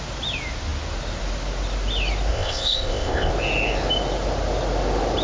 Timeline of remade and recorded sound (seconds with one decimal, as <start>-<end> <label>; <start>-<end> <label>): 0.0-2.3 recorded; 2.3-3.3 remade; 3.3-5.2 recorded